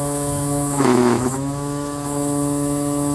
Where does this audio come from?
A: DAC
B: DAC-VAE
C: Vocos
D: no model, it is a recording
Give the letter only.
B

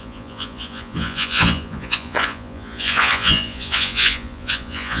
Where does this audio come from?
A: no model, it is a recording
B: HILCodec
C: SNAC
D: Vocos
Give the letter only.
D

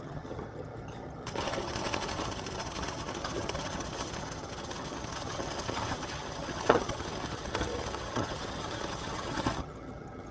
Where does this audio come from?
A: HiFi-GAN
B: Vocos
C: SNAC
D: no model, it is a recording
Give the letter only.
A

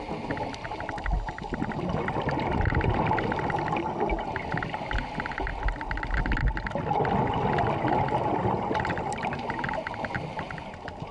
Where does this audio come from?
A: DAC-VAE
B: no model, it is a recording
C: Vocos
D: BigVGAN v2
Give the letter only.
B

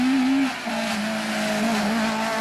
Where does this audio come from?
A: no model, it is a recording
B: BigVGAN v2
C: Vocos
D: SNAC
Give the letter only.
A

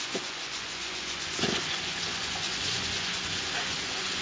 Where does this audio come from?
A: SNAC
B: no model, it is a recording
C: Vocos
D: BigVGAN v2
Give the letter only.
C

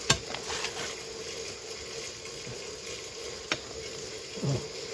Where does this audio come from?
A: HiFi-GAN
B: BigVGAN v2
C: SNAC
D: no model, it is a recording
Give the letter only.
D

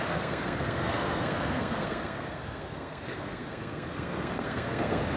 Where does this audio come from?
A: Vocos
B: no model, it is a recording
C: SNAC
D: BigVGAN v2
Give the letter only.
C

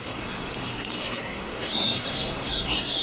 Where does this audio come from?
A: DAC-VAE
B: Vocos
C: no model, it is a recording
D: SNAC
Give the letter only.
D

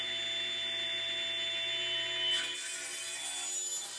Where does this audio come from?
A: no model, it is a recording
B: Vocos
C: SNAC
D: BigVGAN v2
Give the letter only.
A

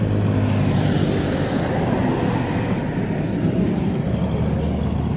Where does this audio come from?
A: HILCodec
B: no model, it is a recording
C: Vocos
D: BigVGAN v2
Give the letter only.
B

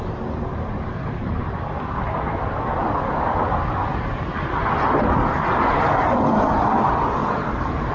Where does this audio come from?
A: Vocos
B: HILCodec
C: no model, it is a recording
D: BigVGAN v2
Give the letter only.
D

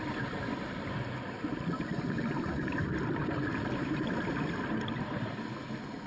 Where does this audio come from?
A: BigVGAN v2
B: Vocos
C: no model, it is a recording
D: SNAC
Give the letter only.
C